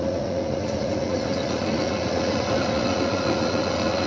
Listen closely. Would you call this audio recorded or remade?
remade